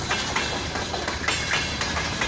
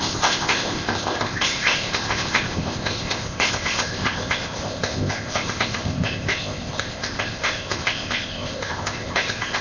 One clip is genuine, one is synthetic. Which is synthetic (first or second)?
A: second